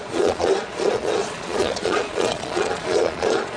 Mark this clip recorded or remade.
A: remade